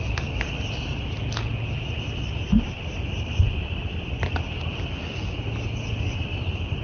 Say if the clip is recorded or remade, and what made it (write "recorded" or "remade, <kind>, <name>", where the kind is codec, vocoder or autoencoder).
recorded